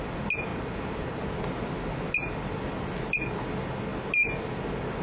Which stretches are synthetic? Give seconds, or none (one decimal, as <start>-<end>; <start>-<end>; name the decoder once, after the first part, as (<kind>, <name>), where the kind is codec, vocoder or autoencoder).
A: none